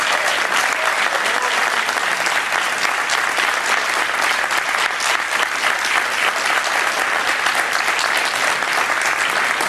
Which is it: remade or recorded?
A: recorded